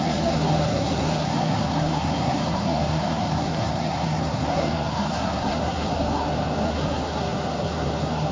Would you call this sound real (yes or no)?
no